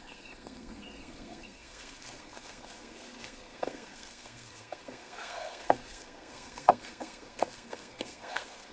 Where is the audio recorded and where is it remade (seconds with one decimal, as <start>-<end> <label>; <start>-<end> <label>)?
0.0-8.7 remade

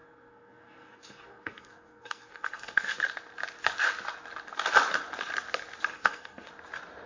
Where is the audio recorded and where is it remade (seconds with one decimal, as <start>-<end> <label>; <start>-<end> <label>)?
0.0-3.0 remade; 3.0-5.9 recorded; 5.9-6.5 remade; 6.5-7.1 recorded

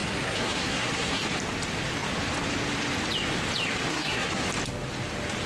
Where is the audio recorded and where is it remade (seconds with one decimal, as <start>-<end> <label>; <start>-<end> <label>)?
0.0-1.2 remade; 1.2-3.9 recorded; 3.9-4.5 remade; 4.5-5.5 recorded